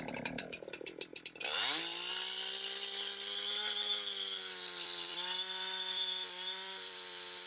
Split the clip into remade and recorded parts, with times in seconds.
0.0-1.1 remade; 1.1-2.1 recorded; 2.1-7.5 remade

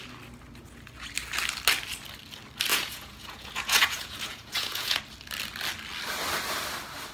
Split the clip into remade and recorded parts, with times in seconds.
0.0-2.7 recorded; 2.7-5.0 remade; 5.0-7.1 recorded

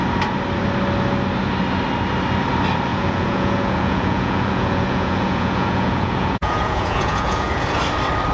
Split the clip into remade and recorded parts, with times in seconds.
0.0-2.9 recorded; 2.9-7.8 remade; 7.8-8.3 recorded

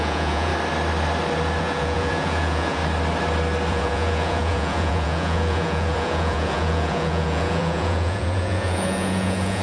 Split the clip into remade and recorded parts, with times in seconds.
0.0-0.5 remade; 0.5-1.6 recorded; 1.6-2.8 remade; 2.8-3.7 recorded; 3.7-9.6 remade

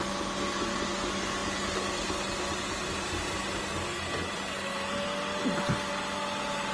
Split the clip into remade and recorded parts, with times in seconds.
0.0-6.7 recorded

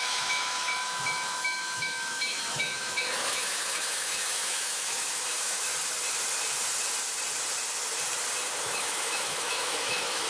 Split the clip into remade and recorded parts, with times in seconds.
0.0-5.7 remade; 5.7-8.6 recorded; 8.6-10.3 remade

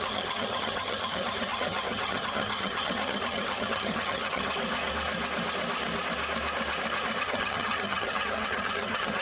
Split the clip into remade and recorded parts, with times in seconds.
0.0-4.5 remade; 4.5-7.2 recorded; 7.2-9.2 remade